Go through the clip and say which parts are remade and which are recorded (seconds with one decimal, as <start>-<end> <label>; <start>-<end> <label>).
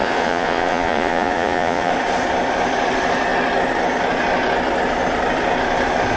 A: 0.0-1.9 remade; 1.9-6.2 recorded